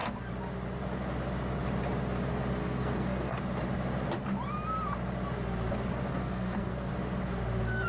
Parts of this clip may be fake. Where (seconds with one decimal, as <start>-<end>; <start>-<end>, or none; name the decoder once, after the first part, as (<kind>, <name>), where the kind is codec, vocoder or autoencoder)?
2.6-3.4 (codec, SNAC); 6.1-6.9